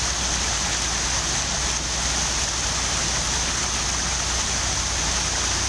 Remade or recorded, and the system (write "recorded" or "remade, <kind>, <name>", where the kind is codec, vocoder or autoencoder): recorded